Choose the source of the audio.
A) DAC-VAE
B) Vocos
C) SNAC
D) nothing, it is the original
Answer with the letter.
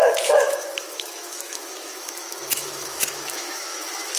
A